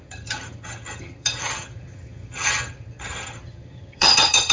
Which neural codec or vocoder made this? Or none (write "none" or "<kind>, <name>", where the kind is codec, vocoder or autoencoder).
vocoder, HiFi-GAN